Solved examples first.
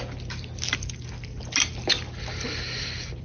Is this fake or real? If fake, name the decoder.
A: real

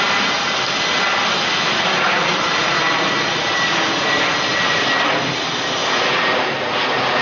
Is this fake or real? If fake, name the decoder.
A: real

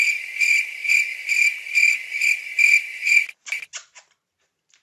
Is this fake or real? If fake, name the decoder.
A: real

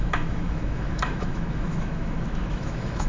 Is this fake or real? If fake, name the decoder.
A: fake, autoencoder, DAC-VAE